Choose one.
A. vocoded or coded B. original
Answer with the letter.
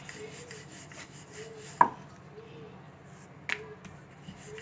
B